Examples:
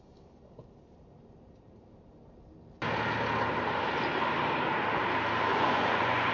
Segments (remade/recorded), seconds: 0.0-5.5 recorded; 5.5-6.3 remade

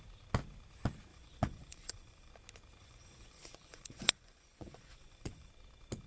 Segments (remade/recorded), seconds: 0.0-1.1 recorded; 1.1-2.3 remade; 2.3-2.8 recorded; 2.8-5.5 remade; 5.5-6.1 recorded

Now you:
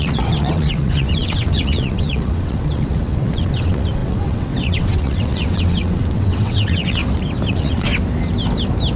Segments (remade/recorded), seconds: 0.0-7.0 remade; 7.0-7.5 recorded; 7.5-7.9 remade; 7.9-9.0 recorded

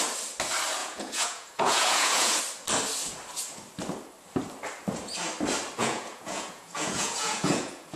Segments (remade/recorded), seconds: 0.0-0.8 recorded; 0.8-2.4 remade; 2.4-5.8 recorded; 5.8-8.0 remade

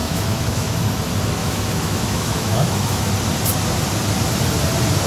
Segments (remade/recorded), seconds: 0.0-0.7 remade; 0.7-1.4 recorded; 1.4-3.1 remade; 3.1-5.1 recorded